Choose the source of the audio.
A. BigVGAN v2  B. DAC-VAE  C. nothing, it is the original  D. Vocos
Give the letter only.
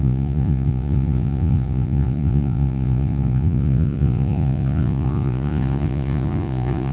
D